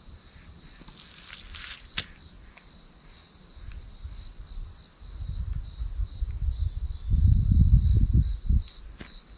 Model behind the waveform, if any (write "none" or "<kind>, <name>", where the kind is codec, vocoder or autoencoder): none